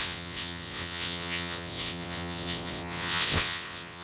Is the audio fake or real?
fake